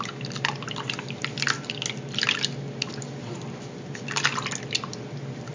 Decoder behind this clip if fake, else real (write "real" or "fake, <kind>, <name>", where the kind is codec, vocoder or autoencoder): real